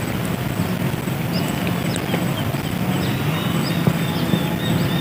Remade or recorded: recorded